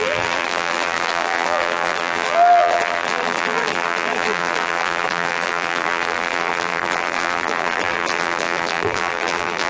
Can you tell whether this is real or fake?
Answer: fake